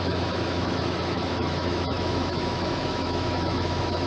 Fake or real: fake